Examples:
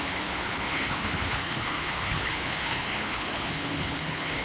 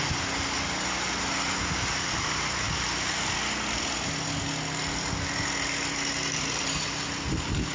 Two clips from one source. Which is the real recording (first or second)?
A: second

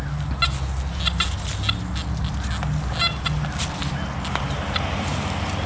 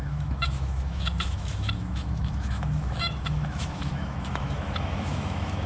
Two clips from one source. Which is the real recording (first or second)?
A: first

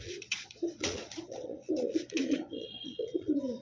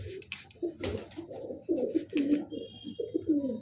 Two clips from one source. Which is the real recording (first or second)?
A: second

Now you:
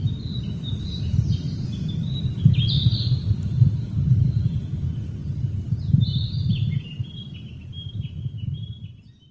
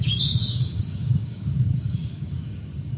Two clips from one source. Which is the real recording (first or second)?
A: first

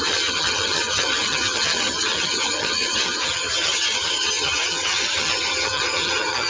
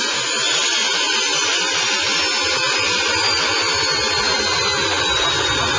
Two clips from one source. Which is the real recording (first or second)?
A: second